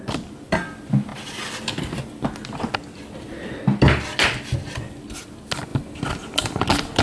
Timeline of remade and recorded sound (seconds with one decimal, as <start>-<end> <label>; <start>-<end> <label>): 0.0-1.1 recorded; 1.1-2.0 remade; 2.0-7.0 recorded